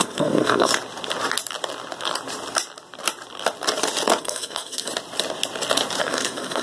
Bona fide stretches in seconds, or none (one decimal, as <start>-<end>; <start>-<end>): 0.7-4.2; 4.9-6.0